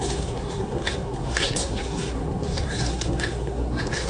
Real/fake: fake